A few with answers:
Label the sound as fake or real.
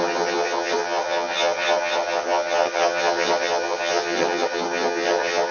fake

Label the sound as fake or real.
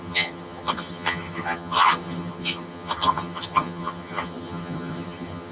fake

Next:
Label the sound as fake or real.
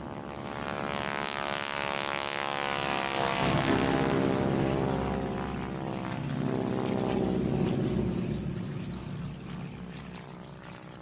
real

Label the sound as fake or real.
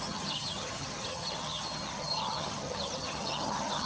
fake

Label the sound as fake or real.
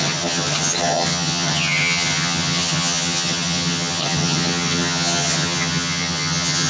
fake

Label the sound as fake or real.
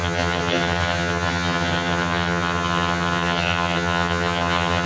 fake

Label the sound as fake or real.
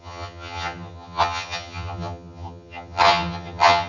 fake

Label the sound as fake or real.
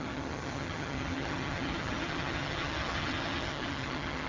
fake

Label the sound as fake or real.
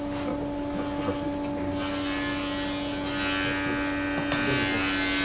real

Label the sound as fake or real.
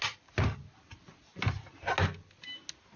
real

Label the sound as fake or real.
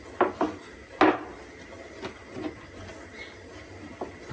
real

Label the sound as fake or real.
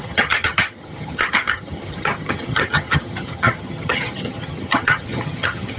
fake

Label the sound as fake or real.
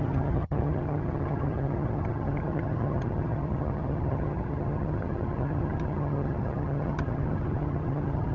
fake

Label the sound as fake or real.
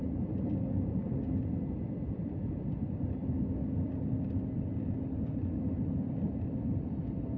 real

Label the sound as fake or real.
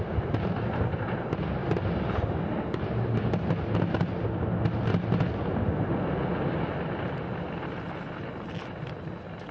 real